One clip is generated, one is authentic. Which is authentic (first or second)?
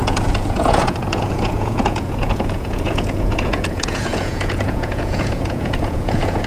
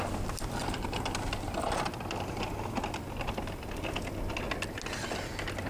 second